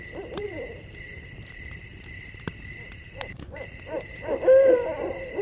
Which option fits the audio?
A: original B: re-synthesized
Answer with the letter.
B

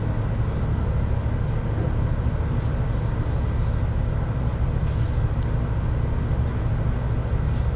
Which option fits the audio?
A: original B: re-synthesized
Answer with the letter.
A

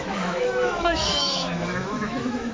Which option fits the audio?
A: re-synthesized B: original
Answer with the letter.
A